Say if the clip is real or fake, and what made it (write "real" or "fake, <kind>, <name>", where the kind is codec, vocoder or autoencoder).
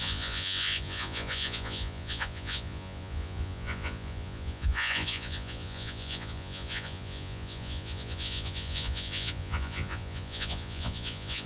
fake, vocoder, Vocos